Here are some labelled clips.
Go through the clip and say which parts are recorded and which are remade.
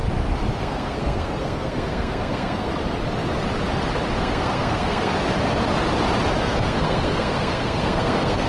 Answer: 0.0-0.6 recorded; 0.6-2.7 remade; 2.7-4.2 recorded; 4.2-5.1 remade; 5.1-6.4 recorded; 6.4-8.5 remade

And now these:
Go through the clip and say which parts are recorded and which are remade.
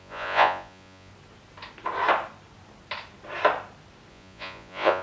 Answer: 0.0-1.1 remade; 1.1-4.1 recorded; 4.1-5.0 remade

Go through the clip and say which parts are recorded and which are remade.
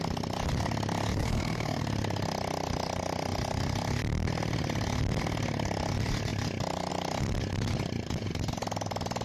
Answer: 0.0-1.2 recorded; 1.2-1.8 remade; 1.8-9.2 recorded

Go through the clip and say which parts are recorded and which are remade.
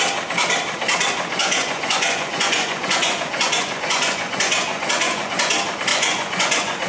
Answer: 0.0-1.4 recorded; 1.4-5.5 remade; 5.5-5.9 recorded; 5.9-6.9 remade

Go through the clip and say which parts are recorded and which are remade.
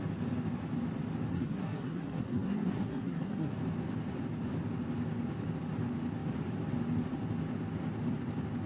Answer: 0.0-1.3 recorded; 1.3-3.5 remade; 3.5-8.7 recorded